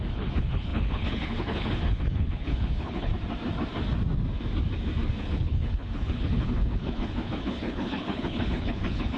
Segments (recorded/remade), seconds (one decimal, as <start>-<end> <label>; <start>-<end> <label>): 0.0-3.1 remade; 3.1-5.2 recorded; 5.2-9.2 remade